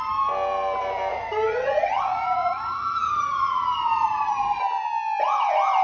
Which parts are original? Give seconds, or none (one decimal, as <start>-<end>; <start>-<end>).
0.0-1.1; 4.6-5.8